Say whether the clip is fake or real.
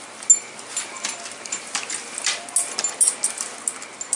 real